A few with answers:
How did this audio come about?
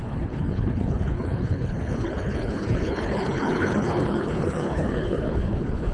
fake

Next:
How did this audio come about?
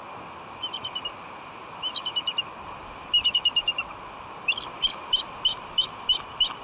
real